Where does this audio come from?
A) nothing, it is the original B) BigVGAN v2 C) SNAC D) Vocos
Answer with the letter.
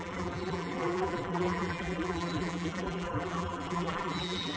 B